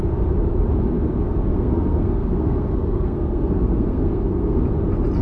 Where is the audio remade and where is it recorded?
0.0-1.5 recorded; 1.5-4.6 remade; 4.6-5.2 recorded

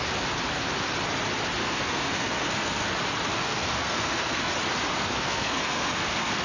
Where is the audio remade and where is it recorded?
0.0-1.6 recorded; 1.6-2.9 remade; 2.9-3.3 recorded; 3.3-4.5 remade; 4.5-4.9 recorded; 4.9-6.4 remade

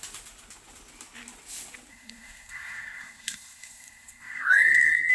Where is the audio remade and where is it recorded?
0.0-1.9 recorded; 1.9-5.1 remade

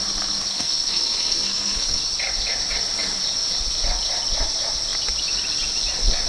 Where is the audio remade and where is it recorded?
0.0-0.5 recorded; 0.5-2.0 remade; 2.0-6.3 recorded